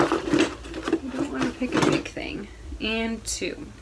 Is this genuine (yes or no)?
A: yes